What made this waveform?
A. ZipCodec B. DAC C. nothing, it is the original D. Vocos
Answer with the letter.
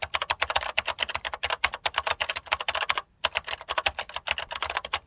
C